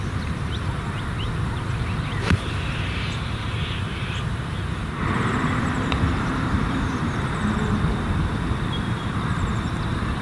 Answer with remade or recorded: remade